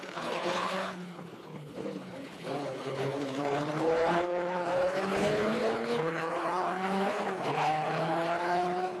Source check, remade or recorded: remade